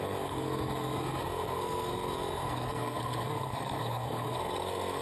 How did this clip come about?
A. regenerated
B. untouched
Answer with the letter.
A